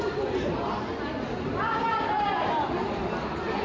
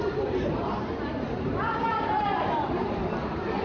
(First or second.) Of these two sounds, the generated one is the second